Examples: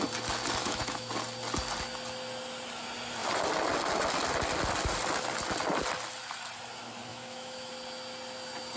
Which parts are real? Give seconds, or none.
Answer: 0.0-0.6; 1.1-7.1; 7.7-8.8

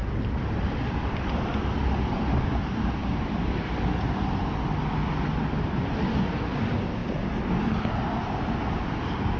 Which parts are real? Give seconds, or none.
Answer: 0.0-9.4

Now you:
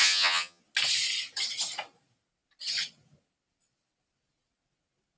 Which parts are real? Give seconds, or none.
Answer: 0.6-5.2

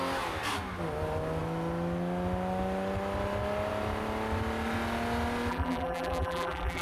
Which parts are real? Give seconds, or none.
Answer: 0.0-5.5